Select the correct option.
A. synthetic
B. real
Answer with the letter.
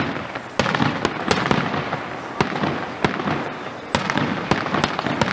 B